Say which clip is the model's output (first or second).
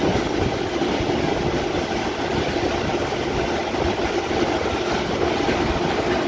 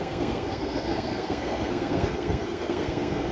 second